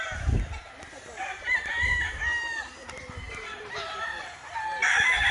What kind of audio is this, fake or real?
real